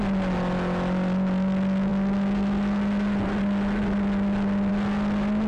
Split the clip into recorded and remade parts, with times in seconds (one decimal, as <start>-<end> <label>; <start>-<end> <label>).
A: 0.0-5.5 recorded